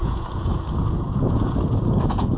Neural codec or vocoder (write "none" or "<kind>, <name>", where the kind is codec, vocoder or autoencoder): vocoder, Vocos